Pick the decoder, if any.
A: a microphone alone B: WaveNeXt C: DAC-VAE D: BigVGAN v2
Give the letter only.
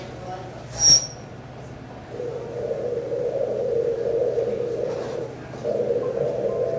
A